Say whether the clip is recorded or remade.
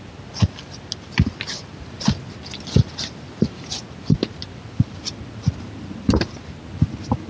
recorded